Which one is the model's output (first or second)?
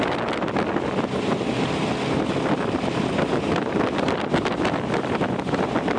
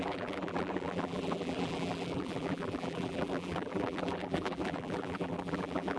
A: second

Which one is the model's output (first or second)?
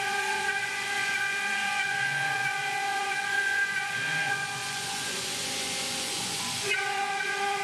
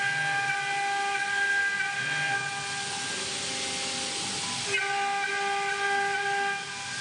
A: first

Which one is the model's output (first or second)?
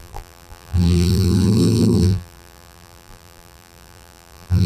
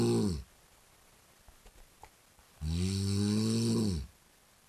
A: first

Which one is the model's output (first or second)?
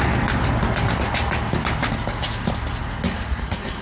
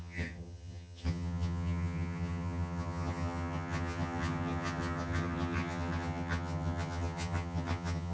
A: second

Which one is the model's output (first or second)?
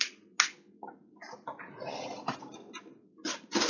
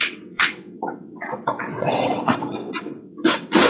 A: second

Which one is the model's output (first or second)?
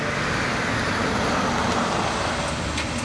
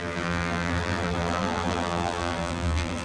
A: second